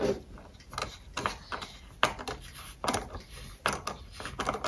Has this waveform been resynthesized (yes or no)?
no